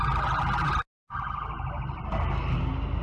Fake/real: real